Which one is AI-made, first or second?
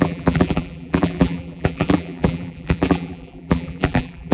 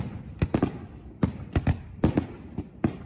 first